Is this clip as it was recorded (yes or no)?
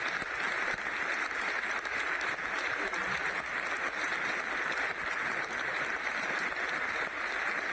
no